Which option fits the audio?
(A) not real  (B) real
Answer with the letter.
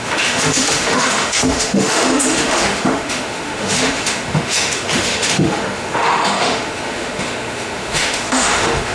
A